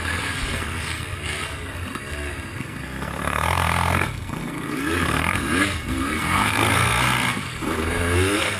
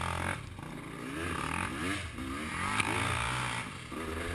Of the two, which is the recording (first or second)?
second